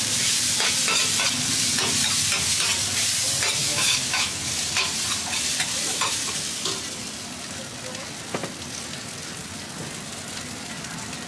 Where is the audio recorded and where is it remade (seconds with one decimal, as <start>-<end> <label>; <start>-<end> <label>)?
0.0-3.6 recorded; 3.6-4.4 remade; 4.4-11.3 recorded